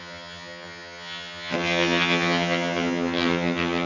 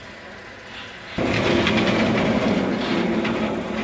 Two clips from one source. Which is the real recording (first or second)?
second